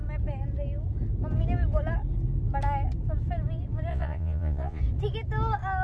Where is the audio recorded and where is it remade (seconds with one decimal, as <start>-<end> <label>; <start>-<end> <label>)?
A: 0.0-3.9 recorded; 3.9-4.8 remade; 4.8-5.8 recorded